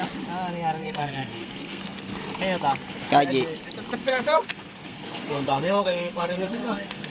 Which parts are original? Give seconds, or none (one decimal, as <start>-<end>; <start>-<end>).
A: 0.0-0.8; 2.4-4.0

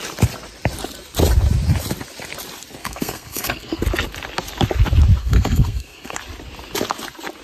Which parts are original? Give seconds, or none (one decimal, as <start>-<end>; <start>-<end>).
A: 0.0-2.8; 3.8-5.2; 6.2-7.4

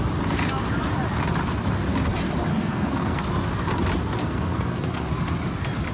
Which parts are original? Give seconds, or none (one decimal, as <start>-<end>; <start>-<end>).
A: 0.0-2.5; 3.2-4.2; 5.1-5.9

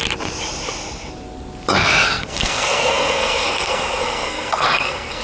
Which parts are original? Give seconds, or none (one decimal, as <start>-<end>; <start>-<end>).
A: 0.0-1.8

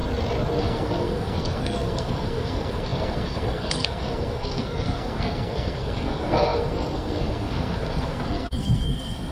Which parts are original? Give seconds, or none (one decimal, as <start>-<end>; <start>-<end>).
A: 0.0-0.6